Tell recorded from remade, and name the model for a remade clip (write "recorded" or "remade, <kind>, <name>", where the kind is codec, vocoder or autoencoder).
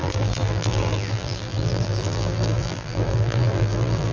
remade, vocoder, BigVGAN v2